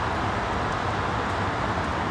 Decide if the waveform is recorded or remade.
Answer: recorded